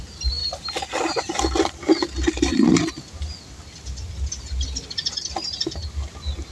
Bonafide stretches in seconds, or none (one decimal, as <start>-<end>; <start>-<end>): 0.0-6.5